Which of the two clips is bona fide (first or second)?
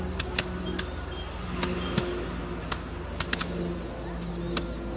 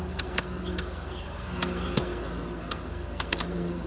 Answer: first